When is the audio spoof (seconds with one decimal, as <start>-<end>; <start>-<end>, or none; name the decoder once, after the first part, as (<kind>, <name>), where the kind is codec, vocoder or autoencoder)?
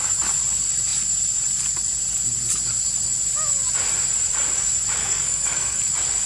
5.0-5.8 (codec, SNAC)